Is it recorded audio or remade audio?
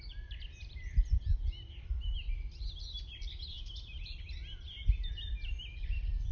remade